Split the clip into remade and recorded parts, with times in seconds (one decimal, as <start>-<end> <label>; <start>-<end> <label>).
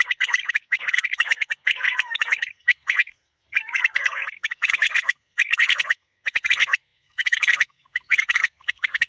0.0-9.1 remade